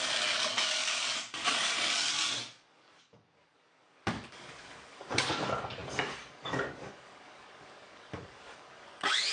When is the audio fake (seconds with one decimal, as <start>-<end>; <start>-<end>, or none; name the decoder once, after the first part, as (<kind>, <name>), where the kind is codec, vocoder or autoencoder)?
0.0-9.3 (codec, DAC)